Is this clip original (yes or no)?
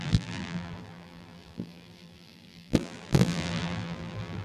no